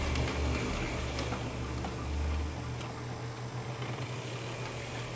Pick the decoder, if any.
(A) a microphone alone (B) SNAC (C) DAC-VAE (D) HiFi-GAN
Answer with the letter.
A